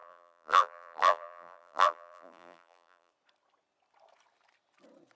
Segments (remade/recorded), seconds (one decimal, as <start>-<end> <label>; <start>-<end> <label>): 0.0-3.1 remade; 3.1-5.2 recorded